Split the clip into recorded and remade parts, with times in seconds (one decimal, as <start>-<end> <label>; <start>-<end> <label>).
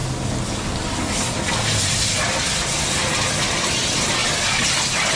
0.0-5.2 recorded